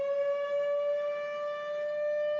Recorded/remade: recorded